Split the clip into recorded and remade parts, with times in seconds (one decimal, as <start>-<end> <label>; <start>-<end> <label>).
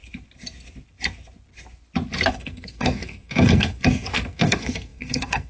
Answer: 0.0-2.3 recorded; 2.3-5.5 remade